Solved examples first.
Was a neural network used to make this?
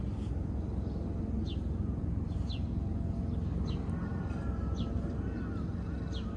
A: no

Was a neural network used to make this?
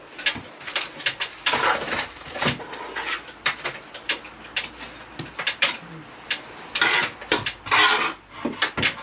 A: no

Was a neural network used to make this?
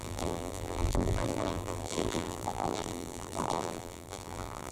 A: yes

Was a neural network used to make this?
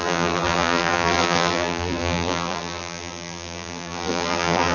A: yes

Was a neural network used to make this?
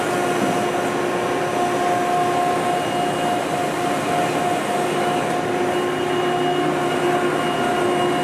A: no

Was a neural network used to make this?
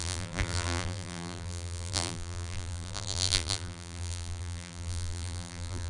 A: yes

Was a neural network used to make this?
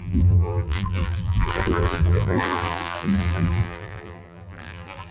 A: yes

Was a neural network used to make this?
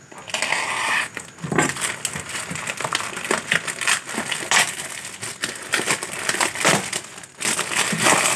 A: no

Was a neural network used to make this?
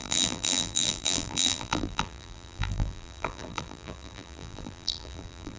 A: yes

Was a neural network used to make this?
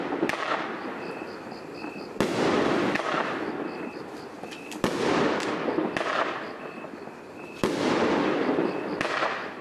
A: no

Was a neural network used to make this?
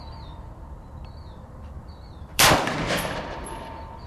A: yes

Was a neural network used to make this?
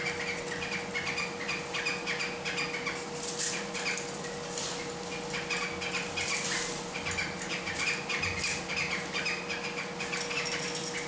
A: no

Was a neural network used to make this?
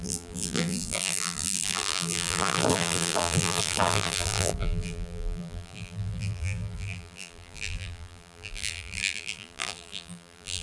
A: yes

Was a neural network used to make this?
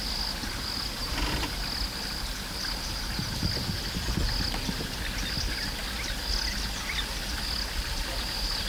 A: no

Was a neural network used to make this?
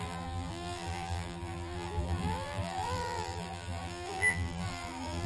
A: yes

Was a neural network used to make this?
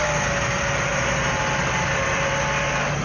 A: no